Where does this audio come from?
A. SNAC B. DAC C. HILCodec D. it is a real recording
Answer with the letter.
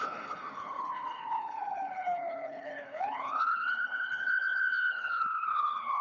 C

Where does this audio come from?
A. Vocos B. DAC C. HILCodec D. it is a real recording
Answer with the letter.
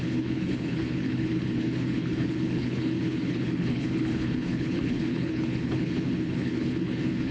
C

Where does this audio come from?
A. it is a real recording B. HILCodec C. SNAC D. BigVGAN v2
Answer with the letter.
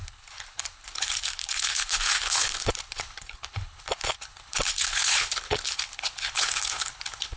B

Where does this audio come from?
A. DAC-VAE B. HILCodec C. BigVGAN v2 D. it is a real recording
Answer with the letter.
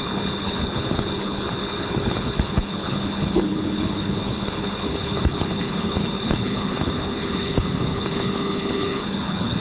B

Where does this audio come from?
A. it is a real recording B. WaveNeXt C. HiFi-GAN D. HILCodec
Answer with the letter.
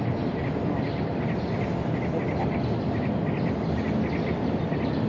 A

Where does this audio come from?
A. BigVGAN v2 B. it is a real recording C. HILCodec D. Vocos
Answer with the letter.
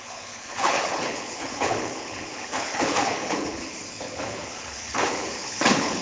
C